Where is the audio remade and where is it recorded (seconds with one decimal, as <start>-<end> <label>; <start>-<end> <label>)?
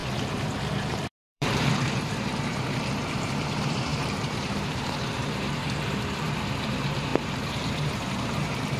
0.0-0.9 recorded; 0.9-2.5 remade; 2.5-3.0 recorded; 3.0-8.8 remade